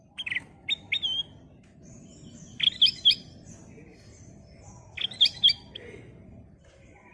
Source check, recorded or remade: recorded